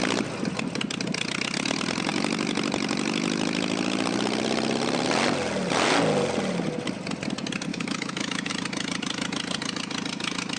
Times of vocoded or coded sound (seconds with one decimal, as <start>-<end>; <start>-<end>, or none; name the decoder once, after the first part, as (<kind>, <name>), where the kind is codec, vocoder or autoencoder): 7.7-8.5 (autoencoder, DAC-VAE)